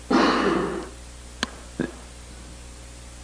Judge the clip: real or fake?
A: real